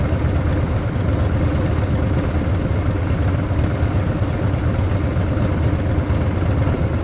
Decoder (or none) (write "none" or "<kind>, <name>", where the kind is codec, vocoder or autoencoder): none